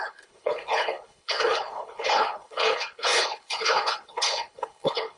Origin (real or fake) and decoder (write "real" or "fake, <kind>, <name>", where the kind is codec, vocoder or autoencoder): fake, codec, HILCodec